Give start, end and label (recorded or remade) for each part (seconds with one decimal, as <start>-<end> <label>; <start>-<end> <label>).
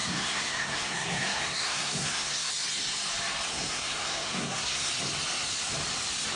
0.0-2.5 remade; 2.5-3.5 recorded; 3.5-4.9 remade; 4.9-6.4 recorded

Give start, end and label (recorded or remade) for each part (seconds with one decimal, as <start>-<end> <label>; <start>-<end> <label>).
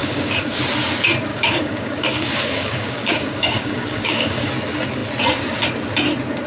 0.0-0.6 remade; 0.6-1.3 recorded; 1.3-4.5 remade; 4.5-6.5 recorded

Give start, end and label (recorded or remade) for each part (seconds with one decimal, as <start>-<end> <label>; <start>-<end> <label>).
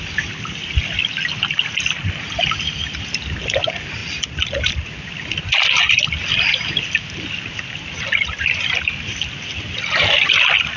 0.0-10.8 recorded